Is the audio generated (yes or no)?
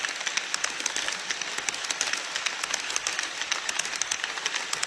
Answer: no